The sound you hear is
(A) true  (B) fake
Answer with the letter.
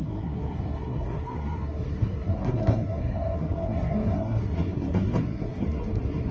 B